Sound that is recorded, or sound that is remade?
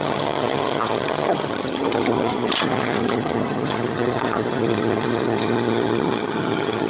remade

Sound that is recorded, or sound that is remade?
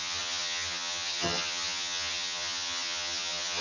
remade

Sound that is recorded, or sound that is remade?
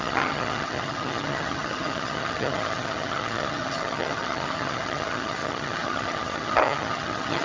remade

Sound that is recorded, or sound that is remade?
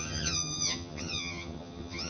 remade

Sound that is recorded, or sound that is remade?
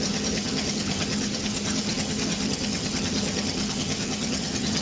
remade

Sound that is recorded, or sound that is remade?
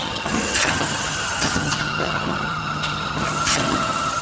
remade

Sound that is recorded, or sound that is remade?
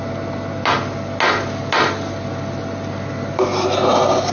recorded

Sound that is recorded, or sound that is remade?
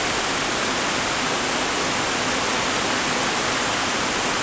recorded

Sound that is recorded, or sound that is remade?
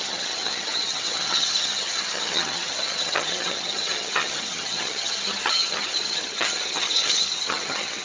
remade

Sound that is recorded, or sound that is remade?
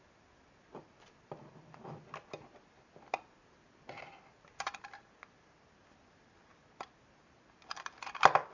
recorded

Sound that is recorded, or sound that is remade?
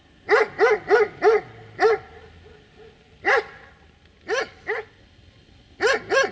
recorded